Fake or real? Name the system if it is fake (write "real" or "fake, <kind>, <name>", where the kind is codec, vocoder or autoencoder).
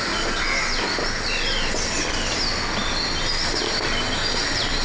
real